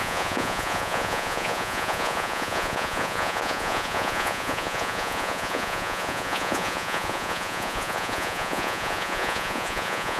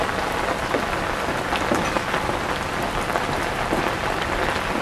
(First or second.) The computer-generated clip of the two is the first